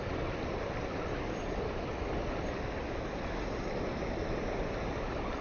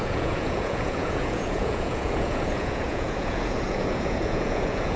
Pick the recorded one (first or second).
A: first